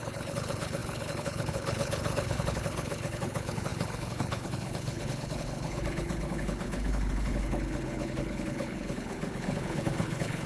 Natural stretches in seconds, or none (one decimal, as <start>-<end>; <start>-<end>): none